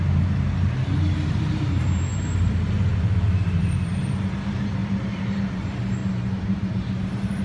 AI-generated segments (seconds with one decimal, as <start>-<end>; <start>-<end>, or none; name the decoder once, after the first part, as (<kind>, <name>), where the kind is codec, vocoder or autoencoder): 0.0-4.8 (vocoder, BigVGAN v2); 5.5-6.0; 6.7-7.4